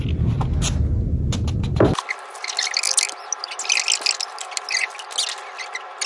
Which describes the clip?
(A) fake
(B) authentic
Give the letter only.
B